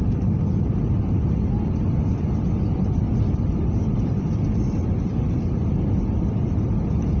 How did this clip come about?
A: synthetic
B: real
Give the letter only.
B